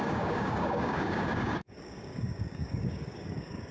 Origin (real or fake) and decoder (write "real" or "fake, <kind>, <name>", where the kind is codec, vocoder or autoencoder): fake, codec, DAC